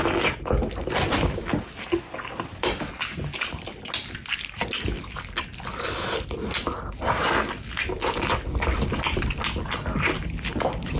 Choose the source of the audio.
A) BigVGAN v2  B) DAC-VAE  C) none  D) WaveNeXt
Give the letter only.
C